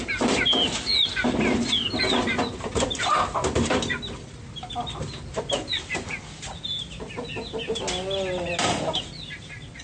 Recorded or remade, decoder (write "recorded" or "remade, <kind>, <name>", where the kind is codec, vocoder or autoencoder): recorded